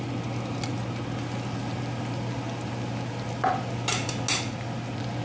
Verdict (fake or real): real